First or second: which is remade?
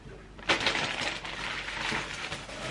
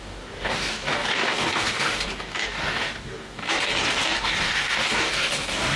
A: second